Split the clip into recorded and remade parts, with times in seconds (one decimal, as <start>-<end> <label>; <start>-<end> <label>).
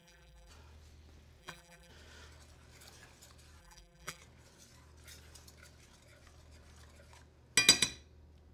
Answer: 0.0-0.5 remade; 0.5-1.4 recorded; 1.4-1.9 remade; 1.9-3.6 recorded; 3.6-4.2 remade; 4.2-8.5 recorded